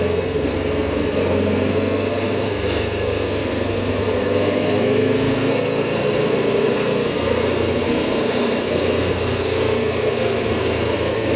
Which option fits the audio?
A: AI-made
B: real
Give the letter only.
A